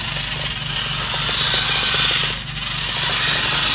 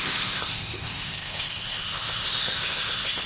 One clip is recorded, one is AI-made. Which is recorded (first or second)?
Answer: first